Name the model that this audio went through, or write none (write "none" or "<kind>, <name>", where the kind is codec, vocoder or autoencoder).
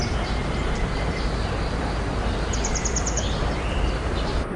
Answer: vocoder, BigVGAN v2